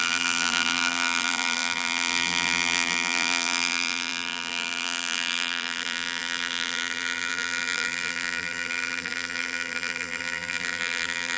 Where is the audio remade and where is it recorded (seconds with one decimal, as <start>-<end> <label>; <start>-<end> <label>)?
0.0-11.4 remade